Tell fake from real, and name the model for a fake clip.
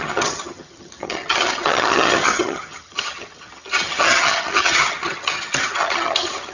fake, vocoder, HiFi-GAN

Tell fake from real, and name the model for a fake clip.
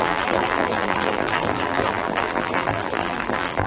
fake, vocoder, BigVGAN v2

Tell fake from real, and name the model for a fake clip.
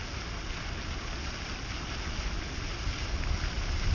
real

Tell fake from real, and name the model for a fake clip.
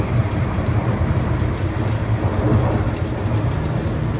real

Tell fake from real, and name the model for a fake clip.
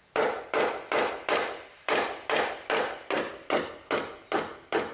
real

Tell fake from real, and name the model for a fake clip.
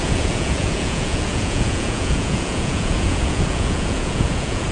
fake, vocoder, Vocos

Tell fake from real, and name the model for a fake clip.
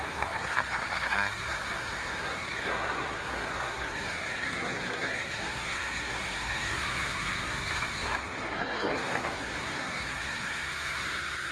fake, codec, SNAC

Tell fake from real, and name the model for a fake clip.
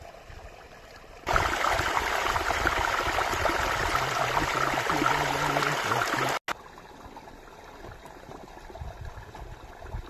real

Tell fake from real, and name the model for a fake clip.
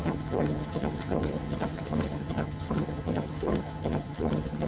fake, vocoder, HiFi-GAN